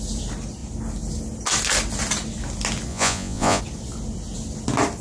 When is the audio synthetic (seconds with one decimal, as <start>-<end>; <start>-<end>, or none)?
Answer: 2.9-3.6